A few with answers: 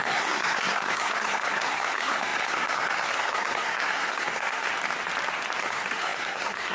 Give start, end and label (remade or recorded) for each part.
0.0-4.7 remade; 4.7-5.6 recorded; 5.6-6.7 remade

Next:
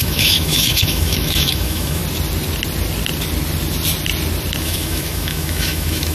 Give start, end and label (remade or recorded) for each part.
0.0-2.0 remade; 2.0-4.6 recorded; 4.6-6.1 remade

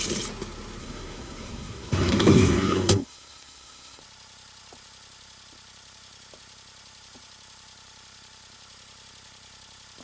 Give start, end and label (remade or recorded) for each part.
0.0-0.8 recorded; 0.8-4.0 remade; 4.0-10.0 recorded